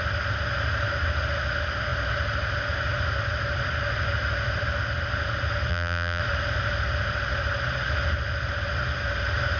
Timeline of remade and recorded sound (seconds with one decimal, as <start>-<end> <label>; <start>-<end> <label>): 0.0-5.7 recorded; 5.7-6.2 remade; 6.2-9.6 recorded